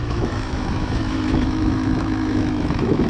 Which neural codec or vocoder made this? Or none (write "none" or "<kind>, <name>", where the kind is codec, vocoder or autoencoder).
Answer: autoencoder, DAC-VAE